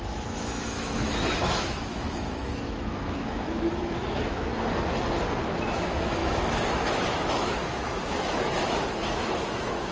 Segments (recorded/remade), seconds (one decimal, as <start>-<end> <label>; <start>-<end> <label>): 0.0-4.5 remade; 4.5-5.4 recorded; 5.4-9.9 remade